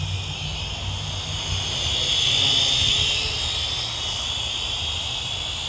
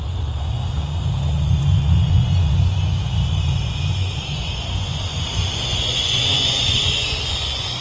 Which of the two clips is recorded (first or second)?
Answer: first